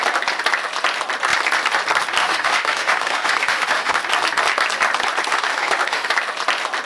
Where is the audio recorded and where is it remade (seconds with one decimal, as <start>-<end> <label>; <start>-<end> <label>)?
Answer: 0.0-2.2 recorded; 2.2-4.0 remade; 4.0-5.3 recorded; 5.3-6.1 remade; 6.1-6.8 recorded